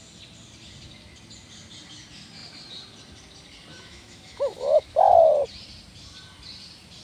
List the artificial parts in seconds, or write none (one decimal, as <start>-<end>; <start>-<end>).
3.7-5.1

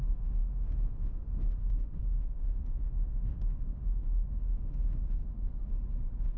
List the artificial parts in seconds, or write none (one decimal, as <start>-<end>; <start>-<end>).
0.0-5.2

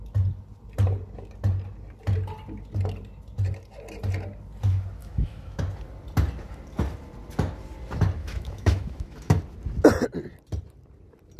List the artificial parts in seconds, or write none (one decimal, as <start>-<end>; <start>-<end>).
5.0-5.6; 8.2-9.4

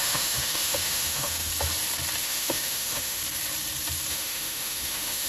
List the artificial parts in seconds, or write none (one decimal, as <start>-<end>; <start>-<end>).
0.0-1.5; 2.2-3.2; 4.1-5.3

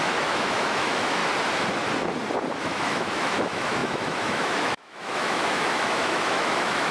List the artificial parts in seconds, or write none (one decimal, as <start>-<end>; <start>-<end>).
0.0-1.2; 2.6-6.9

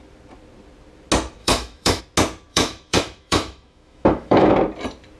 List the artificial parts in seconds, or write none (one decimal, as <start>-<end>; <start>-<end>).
1.4-2.0; 2.5-4.5

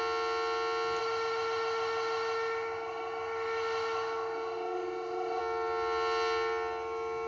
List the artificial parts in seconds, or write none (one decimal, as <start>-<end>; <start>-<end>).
1.0-5.4

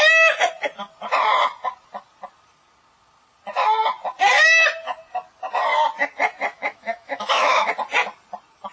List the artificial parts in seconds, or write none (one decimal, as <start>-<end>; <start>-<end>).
6.5-7.7